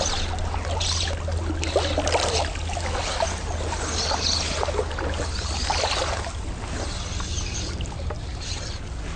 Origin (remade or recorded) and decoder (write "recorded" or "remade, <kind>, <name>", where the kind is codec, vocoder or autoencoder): recorded